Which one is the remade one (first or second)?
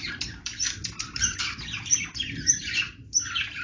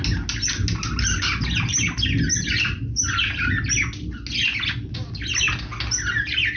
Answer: first